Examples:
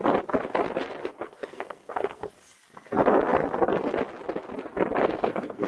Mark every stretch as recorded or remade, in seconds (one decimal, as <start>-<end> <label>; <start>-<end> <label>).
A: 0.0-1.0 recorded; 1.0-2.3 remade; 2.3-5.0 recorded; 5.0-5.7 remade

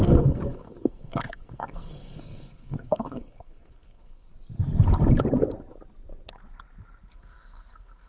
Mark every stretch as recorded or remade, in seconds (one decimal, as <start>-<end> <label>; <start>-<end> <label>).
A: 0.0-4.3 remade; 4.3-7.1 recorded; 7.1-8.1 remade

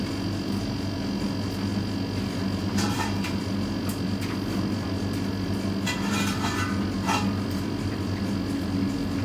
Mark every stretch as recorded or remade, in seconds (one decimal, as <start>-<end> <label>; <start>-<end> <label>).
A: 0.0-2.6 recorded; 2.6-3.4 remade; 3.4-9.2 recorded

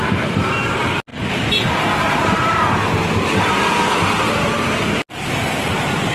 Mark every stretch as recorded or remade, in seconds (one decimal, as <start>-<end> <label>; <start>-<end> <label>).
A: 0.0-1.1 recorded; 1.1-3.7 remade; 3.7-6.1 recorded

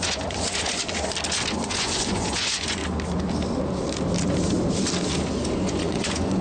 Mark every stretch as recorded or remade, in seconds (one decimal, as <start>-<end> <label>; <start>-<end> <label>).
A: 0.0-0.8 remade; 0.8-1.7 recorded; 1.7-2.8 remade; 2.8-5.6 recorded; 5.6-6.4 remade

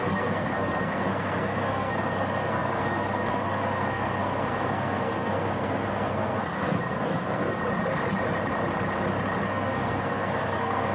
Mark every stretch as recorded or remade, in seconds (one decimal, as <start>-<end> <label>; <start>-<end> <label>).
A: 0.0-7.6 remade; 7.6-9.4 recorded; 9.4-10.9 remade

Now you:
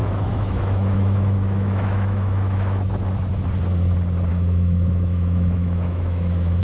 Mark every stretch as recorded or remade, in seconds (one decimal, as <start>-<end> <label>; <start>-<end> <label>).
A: 0.0-2.9 remade; 2.9-4.3 recorded; 4.3-6.6 remade